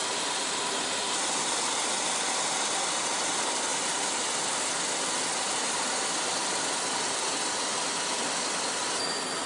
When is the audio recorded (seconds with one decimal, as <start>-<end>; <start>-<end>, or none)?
0.0-9.5